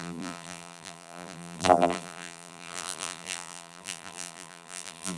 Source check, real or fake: fake